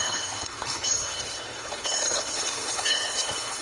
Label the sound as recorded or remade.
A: remade